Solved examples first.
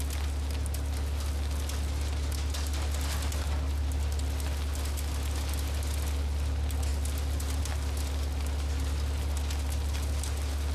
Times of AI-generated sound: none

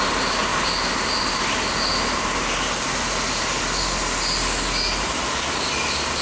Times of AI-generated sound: none

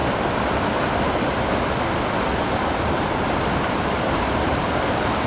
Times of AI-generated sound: 2.2-5.3

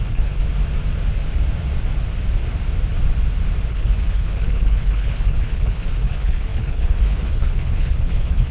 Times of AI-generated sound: 0.0-0.4; 3.7-8.5

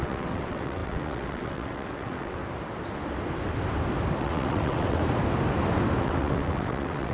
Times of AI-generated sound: 0.0-2.4; 4.2-5.0; 6.0-7.1